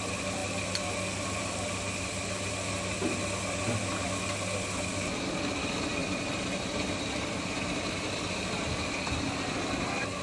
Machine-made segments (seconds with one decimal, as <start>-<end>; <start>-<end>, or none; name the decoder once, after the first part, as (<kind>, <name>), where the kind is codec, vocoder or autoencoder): 6.0-6.7 (vocoder, BigVGAN v2)